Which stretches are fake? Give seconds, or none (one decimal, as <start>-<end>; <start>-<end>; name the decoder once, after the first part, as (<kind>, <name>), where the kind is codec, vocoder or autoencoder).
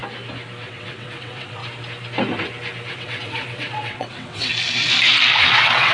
0.6-1.6 (vocoder, WaveNeXt); 2.9-4.5; 5.4-5.9